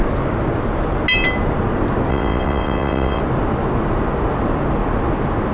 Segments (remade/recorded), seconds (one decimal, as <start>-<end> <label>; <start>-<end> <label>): 0.0-2.1 recorded; 2.1-3.2 remade; 3.2-5.5 recorded